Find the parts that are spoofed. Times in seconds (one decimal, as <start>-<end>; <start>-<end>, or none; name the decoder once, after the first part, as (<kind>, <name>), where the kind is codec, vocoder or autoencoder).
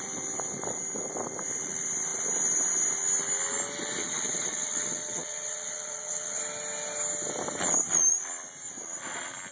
4.0-6.4 (vocoder, WaveNeXt)